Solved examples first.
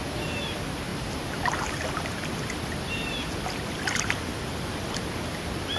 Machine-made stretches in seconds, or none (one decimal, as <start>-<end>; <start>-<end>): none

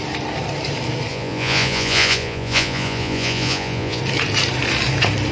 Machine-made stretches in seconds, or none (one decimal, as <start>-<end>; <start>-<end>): 1.1-4.0

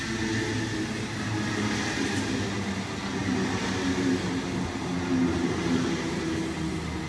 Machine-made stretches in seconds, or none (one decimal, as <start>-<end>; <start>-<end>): none